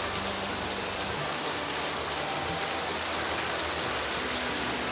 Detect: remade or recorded recorded